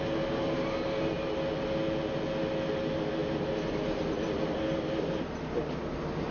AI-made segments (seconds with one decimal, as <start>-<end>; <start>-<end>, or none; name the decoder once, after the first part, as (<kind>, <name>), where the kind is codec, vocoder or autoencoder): none